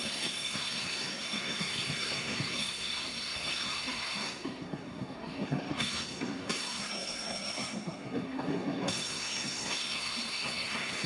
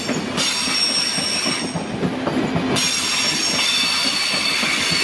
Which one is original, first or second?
second